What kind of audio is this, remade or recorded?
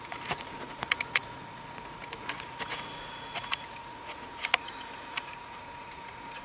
remade